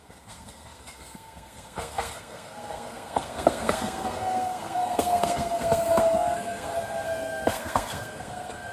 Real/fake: fake